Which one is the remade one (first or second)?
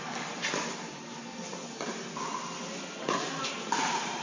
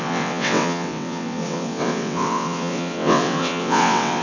second